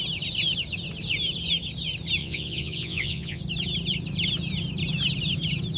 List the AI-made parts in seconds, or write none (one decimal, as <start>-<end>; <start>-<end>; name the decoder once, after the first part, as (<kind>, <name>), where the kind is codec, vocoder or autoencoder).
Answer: 2.2-3.4 (vocoder, Vocos)